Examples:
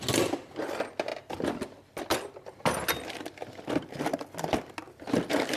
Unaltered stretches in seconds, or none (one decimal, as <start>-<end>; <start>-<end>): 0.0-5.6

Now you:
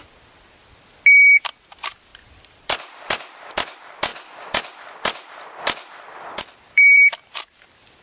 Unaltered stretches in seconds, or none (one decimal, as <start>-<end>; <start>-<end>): 0.0-2.1; 3.5-4.1; 7.5-8.0

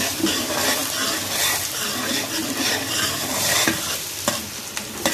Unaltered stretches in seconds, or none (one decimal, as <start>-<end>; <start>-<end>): 0.8-2.4